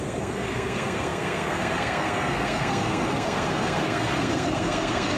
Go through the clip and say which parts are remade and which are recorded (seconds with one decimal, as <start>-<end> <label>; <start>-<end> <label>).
0.0-5.2 remade